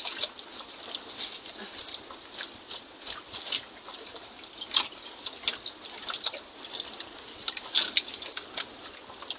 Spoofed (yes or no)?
no